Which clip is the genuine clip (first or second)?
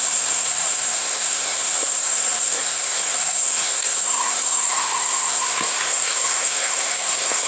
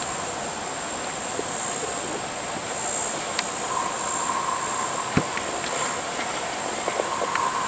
second